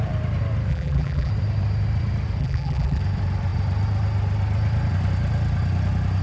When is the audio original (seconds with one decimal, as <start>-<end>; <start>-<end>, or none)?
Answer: 0.0-0.7; 1.3-2.4; 3.0-6.2